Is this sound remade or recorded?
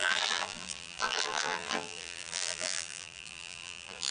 remade